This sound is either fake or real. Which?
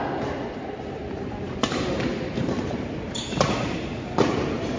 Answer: fake